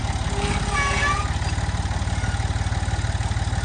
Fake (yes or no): no